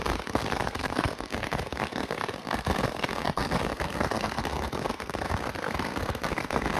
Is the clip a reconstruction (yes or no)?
yes